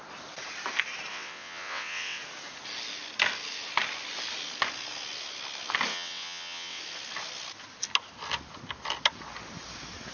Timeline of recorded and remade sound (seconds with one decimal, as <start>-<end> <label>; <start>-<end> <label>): 0.0-1.1 recorded; 1.1-2.2 remade; 2.2-5.9 recorded; 5.9-6.8 remade; 6.8-10.1 recorded